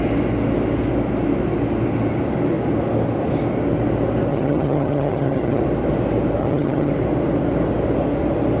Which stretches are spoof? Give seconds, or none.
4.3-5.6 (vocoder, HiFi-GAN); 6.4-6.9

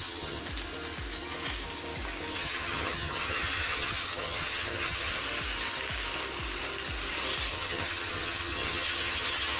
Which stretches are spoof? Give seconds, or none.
0.0-0.4 (vocoder, HiFi-GAN); 2.3-5.1; 7.5-9.6

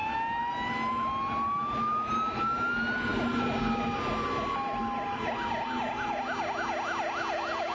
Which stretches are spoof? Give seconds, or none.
none

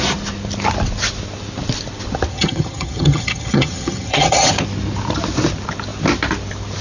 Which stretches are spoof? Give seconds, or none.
2.3-4.5 (vocoder, HiFi-GAN)

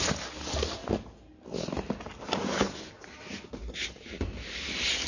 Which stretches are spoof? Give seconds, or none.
none

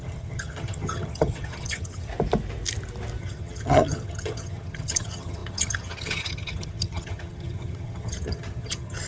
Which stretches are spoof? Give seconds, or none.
0.0-2.1 (vocoder, HiFi-GAN); 3.2-9.1